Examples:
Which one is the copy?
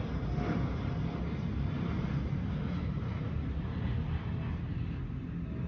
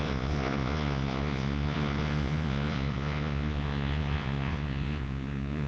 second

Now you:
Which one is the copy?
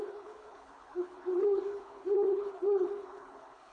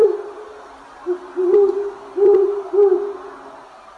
first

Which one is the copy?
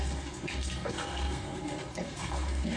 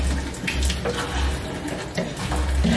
first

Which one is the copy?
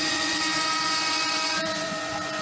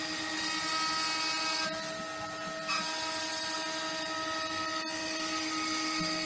first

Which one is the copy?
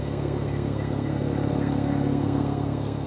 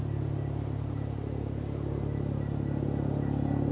first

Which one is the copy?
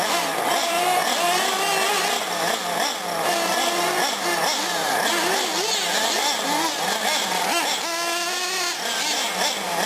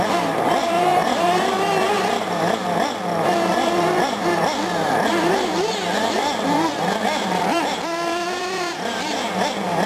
second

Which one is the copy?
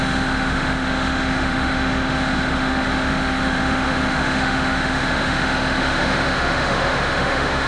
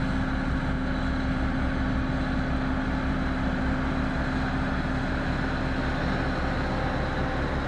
first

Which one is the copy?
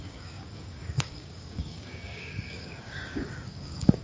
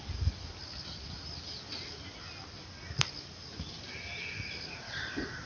first